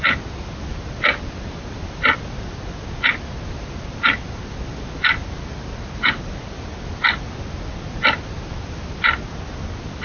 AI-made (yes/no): no